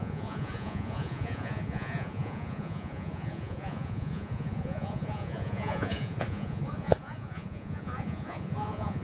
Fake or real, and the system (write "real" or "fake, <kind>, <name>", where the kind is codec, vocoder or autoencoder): fake, vocoder, Vocos